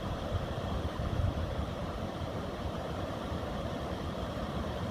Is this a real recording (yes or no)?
no